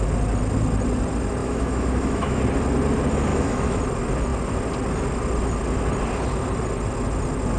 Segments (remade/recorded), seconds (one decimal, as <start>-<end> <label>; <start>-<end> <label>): 0.0-1.4 recorded; 1.4-2.4 remade; 2.4-3.3 recorded; 3.3-3.8 remade; 3.8-7.6 recorded